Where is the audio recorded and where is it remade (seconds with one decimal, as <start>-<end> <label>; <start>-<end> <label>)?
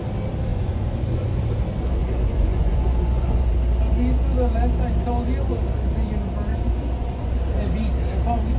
0.0-0.5 recorded; 0.5-1.4 remade; 1.4-2.0 recorded; 2.0-3.5 remade; 3.5-6.5 recorded; 6.5-7.3 remade; 7.3-8.6 recorded